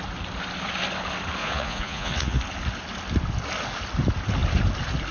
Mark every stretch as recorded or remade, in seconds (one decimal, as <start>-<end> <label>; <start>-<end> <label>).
0.0-1.4 recorded; 1.4-2.4 remade; 2.4-5.1 recorded